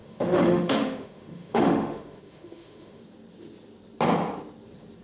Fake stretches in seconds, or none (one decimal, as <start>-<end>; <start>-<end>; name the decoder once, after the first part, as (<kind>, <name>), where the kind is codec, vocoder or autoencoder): 0.0-3.0 (autoencoder, DAC-VAE)